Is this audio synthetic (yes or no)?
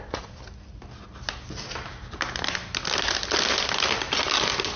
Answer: no